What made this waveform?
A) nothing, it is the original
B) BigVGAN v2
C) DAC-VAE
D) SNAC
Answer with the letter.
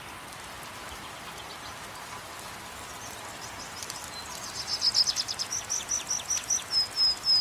A